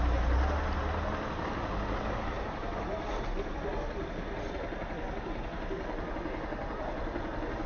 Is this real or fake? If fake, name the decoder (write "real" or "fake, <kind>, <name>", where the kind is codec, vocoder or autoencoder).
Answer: real